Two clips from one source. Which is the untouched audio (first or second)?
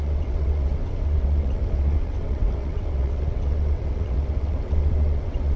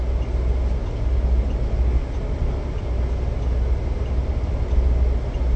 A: second